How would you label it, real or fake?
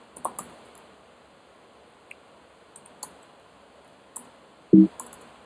real